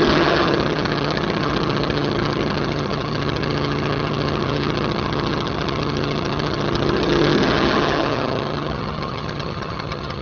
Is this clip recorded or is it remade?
remade